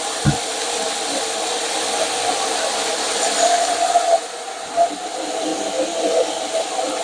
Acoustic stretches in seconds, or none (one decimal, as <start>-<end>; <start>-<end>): 0.0-7.0